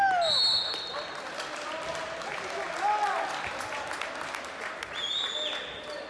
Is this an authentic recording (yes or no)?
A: yes